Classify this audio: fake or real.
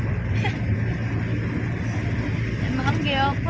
real